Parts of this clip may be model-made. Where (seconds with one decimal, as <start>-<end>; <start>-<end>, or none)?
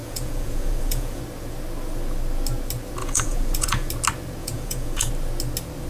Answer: 0.0-1.2; 3.0-3.9; 4.4-5.1